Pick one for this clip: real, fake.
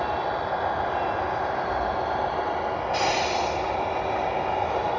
real